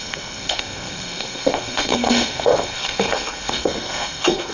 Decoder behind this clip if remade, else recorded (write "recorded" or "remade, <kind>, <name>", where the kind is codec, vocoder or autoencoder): remade, codec, SNAC